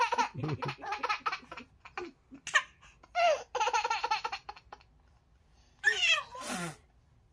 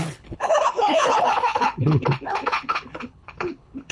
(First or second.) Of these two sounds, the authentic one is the first